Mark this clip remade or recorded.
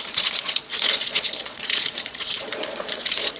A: remade